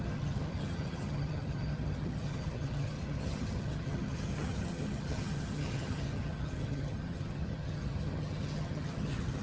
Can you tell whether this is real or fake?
fake